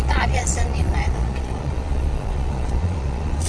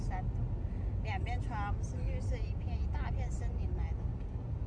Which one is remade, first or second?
first